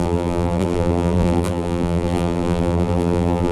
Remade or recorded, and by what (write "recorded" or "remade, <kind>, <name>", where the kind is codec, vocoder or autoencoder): remade, vocoder, BigVGAN v2